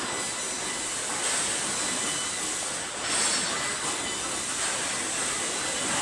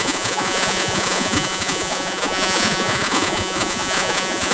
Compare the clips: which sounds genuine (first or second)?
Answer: first